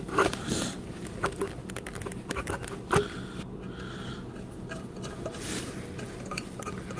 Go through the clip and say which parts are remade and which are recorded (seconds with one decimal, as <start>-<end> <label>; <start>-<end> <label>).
0.0-7.0 recorded